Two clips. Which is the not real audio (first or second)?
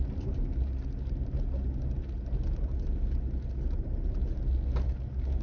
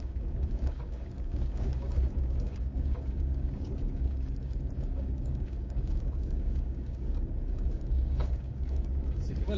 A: second